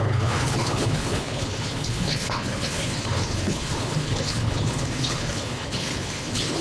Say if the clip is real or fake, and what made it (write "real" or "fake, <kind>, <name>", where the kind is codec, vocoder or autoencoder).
fake, codec, HILCodec